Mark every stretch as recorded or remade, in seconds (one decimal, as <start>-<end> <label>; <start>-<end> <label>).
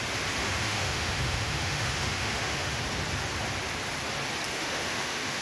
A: 0.0-0.4 recorded; 0.4-2.8 remade; 2.8-4.5 recorded; 4.5-5.4 remade